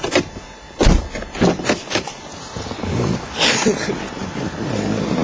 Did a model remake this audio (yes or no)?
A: no